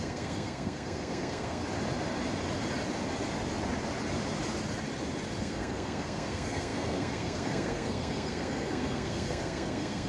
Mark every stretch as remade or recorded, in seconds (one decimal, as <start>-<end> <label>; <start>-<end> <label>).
0.0-1.6 remade; 1.6-5.4 recorded; 5.4-10.1 remade

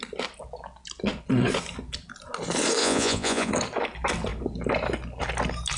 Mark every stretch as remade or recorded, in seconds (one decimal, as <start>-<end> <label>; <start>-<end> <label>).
0.0-2.8 recorded; 2.8-3.5 remade; 3.5-5.8 recorded

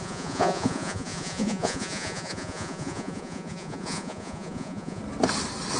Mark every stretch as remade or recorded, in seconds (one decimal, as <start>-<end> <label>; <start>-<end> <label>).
0.0-5.0 remade; 5.0-5.8 recorded

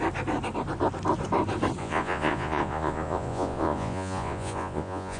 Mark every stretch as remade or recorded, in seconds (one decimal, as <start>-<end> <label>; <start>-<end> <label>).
0.0-1.8 recorded; 1.8-5.2 remade

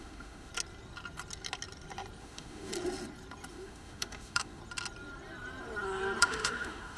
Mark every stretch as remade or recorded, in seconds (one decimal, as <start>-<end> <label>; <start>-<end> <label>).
0.0-0.5 remade; 0.5-2.2 recorded; 2.2-2.7 remade; 2.7-3.5 recorded; 3.5-4.6 remade; 4.6-6.2 recorded; 6.2-7.0 remade

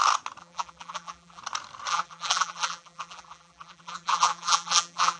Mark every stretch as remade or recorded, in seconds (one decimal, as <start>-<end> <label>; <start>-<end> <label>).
0.0-0.4 recorded; 0.4-1.4 remade; 1.4-1.9 recorded; 1.9-5.2 remade

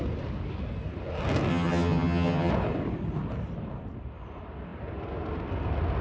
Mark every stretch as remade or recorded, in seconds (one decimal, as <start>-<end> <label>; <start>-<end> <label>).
0.0-1.5 recorded; 1.5-2.5 remade; 2.5-6.0 recorded

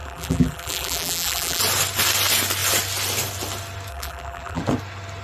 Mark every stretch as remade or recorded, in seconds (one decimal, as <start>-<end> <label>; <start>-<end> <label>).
0.0-1.6 remade; 1.6-3.9 recorded; 3.9-4.6 remade; 4.6-5.2 recorded